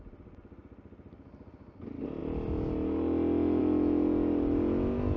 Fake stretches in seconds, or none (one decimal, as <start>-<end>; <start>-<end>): none